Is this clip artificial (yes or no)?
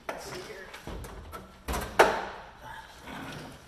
no